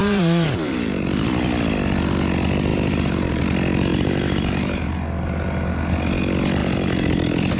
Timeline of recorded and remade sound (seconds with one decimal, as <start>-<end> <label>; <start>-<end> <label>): 0.0-1.0 remade; 1.0-2.7 recorded; 2.7-3.4 remade; 3.4-3.9 recorded; 3.9-4.9 remade; 4.9-6.6 recorded; 6.6-7.6 remade